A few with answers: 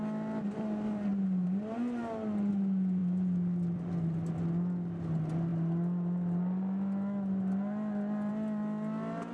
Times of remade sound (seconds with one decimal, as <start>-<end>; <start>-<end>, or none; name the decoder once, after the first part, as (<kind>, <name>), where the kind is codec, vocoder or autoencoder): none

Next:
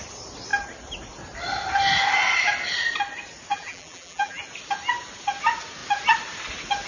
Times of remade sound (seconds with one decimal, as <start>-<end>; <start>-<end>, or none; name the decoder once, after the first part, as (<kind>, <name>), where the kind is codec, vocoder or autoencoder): 3.5-4.4 (vocoder, BigVGAN v2)

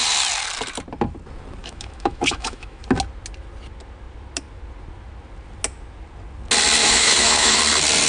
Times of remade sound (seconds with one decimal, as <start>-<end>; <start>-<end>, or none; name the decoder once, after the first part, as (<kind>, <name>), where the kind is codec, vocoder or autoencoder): 1.6-2.8 (autoencoder, DAC-VAE); 6.8-7.6

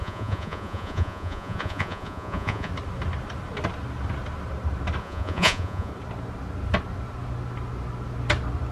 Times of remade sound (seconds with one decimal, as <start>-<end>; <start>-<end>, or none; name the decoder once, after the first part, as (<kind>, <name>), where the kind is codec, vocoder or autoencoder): 0.0-2.7 (vocoder, Vocos); 5.0-5.9

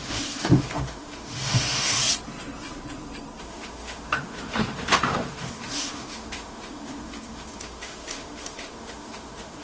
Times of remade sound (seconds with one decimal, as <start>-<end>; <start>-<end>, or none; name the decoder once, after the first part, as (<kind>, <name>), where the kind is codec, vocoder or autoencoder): 0.0-2.0 (autoencoder, DAC-VAE); 3.4-9.6

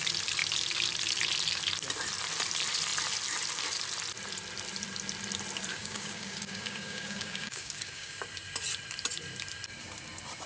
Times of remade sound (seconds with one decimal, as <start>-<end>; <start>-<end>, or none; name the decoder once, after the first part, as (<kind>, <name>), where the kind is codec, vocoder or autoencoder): 5.7-8.2 (codec, DAC)

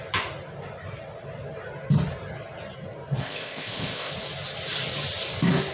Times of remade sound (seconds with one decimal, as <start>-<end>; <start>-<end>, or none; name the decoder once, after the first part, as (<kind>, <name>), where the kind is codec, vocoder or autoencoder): 3.2-4.1 (codec, ZipCodec)